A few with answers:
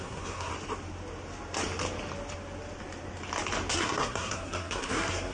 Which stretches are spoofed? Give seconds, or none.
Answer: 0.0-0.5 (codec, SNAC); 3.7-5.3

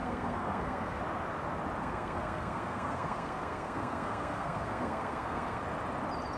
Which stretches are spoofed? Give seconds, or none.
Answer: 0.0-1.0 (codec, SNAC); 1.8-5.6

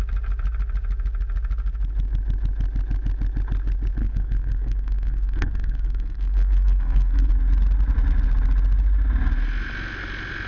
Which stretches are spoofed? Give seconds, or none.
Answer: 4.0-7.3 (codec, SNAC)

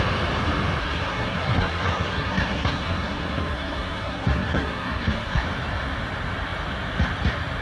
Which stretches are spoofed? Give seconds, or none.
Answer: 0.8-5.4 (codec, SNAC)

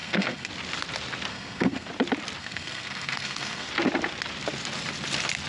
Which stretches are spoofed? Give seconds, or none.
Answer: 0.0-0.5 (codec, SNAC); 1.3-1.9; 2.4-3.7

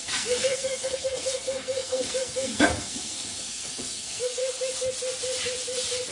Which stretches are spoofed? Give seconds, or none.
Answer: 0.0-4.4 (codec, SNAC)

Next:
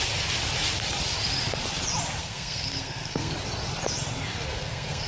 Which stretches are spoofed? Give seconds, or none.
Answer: 2.2-3.3 (codec, SNAC); 4.5-5.1